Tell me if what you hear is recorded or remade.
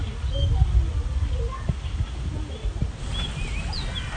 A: recorded